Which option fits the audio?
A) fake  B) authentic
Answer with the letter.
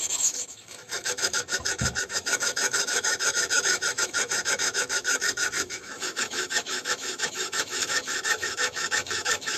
A